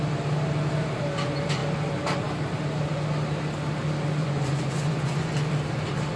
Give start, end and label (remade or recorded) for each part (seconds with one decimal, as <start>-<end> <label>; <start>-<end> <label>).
0.0-4.2 recorded; 4.2-5.3 remade; 5.3-6.2 recorded